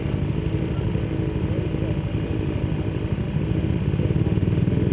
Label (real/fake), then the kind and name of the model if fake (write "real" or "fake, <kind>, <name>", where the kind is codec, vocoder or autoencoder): real